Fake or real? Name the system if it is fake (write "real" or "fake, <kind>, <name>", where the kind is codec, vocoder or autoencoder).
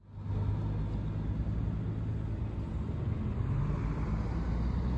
real